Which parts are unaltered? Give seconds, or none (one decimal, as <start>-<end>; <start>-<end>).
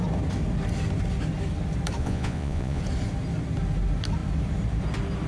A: 0.0-2.0; 2.8-5.3